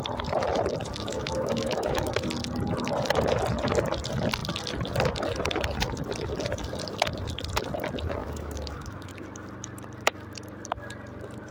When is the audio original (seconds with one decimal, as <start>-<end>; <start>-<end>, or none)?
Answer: 0.0-1.1; 2.1-8.2; 9.1-11.5